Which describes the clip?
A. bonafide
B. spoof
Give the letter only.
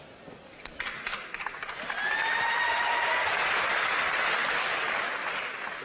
A